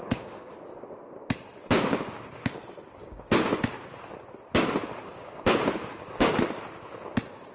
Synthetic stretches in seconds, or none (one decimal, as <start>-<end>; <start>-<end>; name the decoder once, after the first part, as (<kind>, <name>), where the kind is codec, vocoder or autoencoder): 0.0-0.6 (codec, DAC); 1.9-2.6; 3.0-3.6; 5.1-6.3